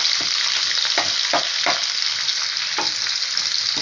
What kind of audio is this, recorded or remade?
recorded